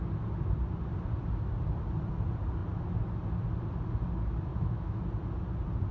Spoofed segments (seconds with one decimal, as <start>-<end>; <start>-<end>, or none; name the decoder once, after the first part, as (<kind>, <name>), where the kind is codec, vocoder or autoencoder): 4.5-5.0 (autoencoder, DAC-VAE)